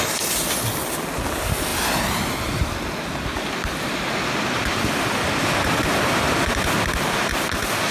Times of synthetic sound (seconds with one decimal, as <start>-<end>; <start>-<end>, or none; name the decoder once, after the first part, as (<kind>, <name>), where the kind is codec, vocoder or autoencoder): none